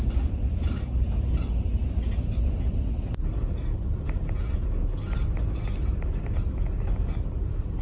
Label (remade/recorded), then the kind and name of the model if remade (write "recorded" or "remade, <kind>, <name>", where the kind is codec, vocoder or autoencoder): recorded